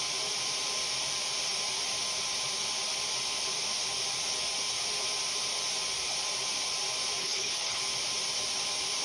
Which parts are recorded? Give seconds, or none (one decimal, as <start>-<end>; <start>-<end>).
0.0-7.2; 7.8-9.0